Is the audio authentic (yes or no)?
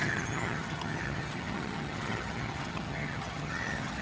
no